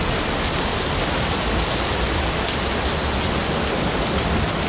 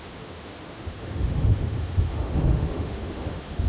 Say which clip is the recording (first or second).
first